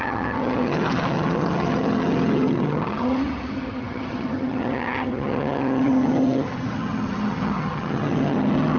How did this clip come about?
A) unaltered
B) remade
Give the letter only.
B